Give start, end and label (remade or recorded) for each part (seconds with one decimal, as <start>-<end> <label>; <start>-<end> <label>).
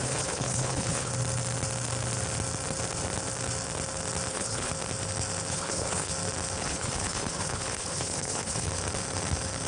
0.0-1.1 remade; 1.1-4.3 recorded; 4.3-4.7 remade; 4.7-5.5 recorded; 5.5-6.1 remade; 6.1-6.6 recorded; 6.6-8.7 remade; 8.7-9.7 recorded